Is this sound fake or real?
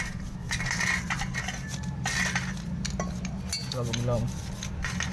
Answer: real